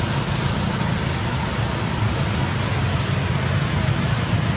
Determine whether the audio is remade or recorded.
recorded